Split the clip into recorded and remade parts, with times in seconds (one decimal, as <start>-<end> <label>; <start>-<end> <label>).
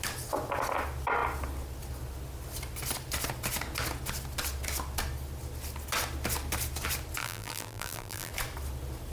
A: 0.0-7.2 recorded; 7.2-8.3 remade; 8.3-9.1 recorded